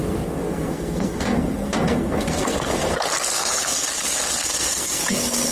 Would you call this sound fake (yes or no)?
yes